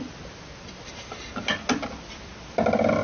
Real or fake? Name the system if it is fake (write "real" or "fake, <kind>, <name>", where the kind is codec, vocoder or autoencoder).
real